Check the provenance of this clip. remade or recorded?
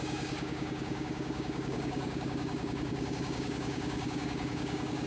remade